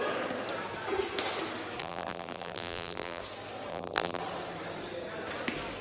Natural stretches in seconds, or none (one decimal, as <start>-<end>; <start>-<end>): 0.0-1.8; 3.2-3.7; 4.2-5.8